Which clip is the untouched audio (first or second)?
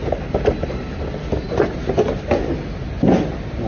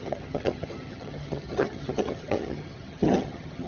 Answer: first